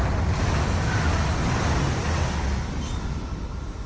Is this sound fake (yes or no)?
no